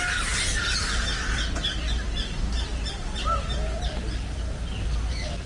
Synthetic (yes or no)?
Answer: no